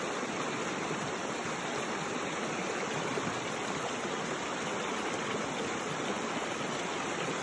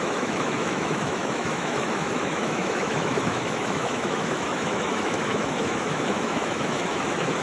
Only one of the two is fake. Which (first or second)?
second